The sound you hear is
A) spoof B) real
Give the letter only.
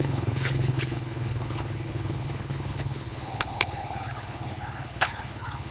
A